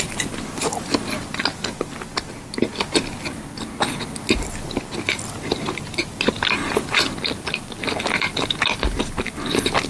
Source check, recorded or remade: recorded